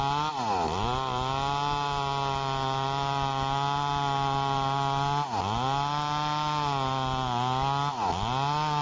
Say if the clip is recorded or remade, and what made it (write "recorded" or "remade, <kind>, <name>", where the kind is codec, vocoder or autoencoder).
recorded